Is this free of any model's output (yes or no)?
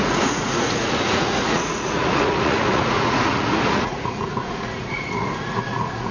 no